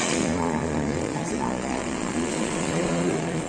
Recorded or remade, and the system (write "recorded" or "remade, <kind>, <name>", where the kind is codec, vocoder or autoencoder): remade, vocoder, Vocos